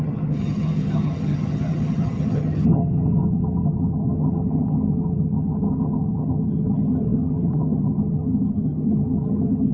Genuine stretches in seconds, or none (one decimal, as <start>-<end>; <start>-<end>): none